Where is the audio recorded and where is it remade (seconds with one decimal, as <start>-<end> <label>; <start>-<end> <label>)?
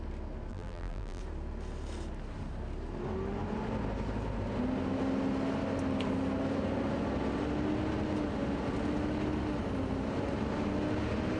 0.0-0.5 recorded; 0.5-1.2 remade; 1.2-11.4 recorded